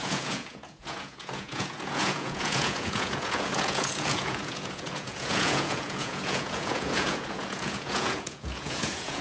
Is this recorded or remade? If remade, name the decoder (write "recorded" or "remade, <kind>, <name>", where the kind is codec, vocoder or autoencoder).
remade, vocoder, Vocos